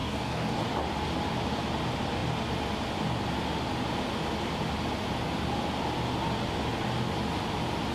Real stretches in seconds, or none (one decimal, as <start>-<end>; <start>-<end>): 0.6-7.9